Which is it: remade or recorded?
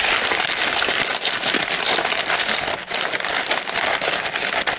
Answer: recorded